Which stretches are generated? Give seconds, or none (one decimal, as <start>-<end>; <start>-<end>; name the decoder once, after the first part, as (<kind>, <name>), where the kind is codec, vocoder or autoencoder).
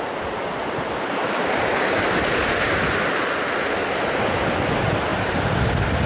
0.6-2.4 (vocoder, BigVGAN v2)